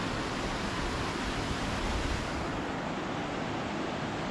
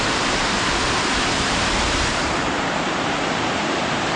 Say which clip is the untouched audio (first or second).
first